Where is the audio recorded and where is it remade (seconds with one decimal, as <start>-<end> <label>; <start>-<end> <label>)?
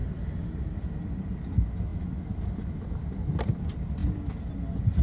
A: 0.0-5.0 recorded